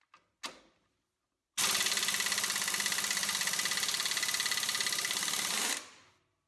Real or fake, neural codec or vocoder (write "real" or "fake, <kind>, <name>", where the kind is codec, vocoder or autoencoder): real